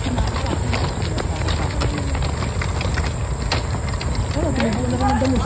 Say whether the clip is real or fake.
real